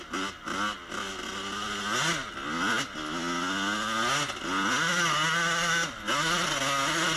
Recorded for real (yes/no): yes